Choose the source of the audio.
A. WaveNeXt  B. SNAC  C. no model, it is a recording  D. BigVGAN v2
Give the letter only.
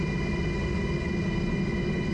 C